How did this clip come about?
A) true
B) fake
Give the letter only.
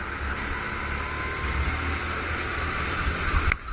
A